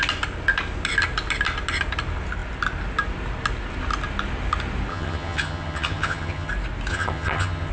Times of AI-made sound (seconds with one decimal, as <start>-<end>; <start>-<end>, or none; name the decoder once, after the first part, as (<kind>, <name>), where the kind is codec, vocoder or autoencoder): 4.9-6.5 (vocoder, HiFi-GAN); 6.9-7.7